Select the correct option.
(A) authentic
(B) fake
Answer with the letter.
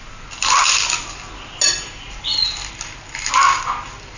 A